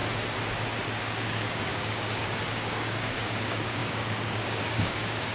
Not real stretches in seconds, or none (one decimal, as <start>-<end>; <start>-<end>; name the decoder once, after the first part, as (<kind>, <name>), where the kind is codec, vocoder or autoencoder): 1.0-5.3 (codec, DAC)